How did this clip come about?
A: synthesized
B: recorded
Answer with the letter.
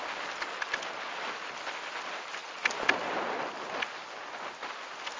B